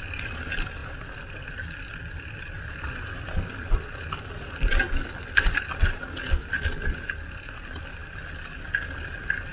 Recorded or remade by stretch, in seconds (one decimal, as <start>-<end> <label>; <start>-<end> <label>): 0.0-9.5 recorded